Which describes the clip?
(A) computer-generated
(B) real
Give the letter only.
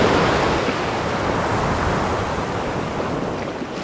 B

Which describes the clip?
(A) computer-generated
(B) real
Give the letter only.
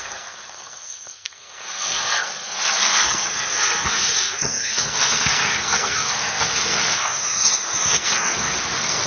A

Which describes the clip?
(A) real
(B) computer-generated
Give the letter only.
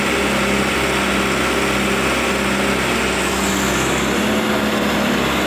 A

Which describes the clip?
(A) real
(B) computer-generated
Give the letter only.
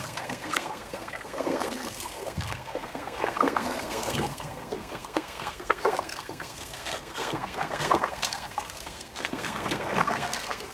B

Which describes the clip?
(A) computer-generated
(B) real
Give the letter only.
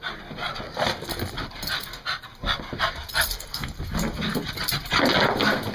B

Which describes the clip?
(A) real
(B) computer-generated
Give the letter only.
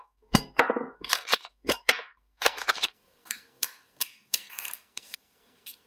B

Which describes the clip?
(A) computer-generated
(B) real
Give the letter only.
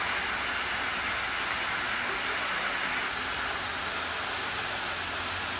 B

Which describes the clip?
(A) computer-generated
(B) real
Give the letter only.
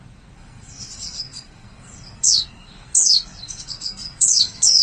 A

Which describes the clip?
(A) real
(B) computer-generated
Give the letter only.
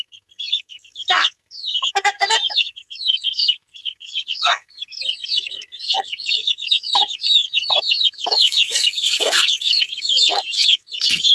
B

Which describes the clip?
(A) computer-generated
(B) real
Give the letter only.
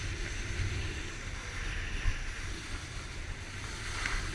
B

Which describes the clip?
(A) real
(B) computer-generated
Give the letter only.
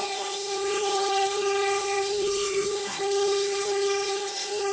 B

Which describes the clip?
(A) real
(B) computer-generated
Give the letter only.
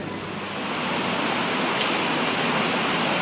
A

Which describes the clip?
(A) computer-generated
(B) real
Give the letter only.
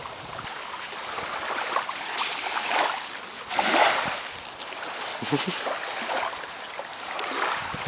B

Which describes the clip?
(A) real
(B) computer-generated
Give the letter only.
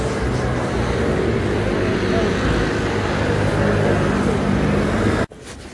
A